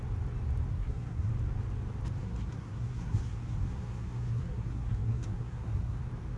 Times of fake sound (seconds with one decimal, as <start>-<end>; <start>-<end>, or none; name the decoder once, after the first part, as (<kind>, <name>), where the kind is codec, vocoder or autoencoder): 0.7-1.3 (codec, SNAC); 2.2-6.0